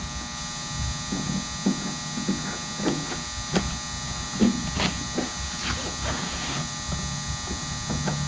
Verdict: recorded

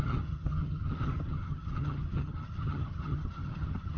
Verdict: remade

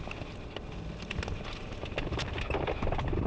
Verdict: recorded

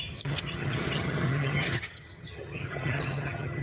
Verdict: remade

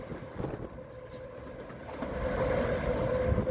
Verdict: recorded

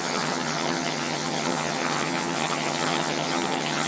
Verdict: remade